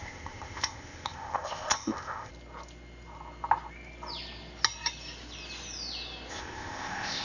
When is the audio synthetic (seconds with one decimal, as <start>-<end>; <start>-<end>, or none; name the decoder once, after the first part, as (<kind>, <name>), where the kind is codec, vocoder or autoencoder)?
0.0-2.3 (codec, ZipCodec); 6.3-7.2